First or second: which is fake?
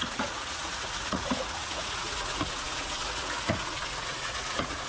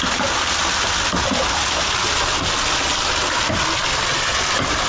first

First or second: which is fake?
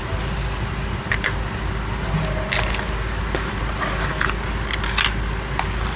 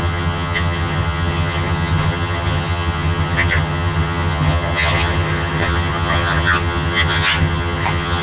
second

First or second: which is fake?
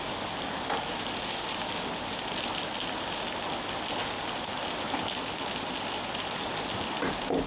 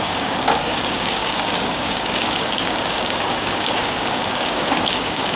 second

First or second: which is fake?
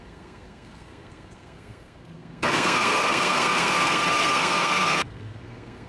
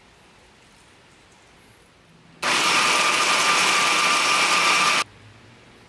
first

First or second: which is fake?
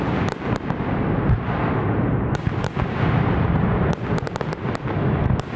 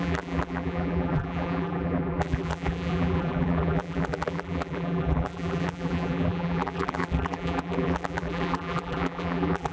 second